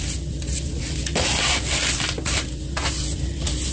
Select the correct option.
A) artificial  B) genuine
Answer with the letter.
B